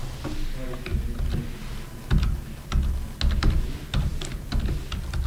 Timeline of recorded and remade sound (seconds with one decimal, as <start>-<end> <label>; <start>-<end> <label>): 0.0-5.3 recorded